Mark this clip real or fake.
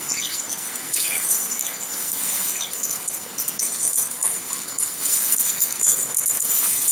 fake